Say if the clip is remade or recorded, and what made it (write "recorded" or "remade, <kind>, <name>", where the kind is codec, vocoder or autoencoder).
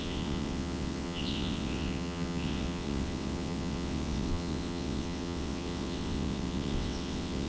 remade, vocoder, WaveNeXt